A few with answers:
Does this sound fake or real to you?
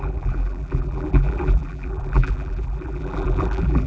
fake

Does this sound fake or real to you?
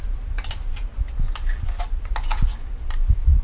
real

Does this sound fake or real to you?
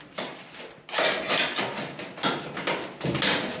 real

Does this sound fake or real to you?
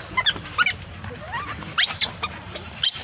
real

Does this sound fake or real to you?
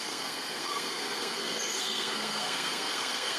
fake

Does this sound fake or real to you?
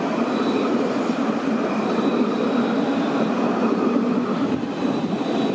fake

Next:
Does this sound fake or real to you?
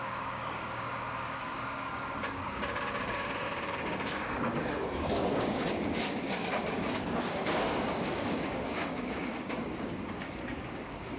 fake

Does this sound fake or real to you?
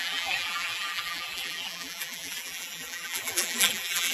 fake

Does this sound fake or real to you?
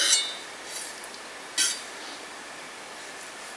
real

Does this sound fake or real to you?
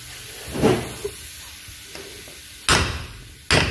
real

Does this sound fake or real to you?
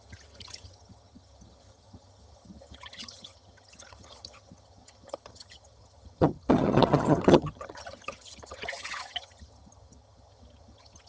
fake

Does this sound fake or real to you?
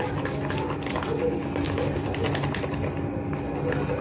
real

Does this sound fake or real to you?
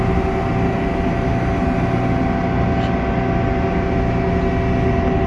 real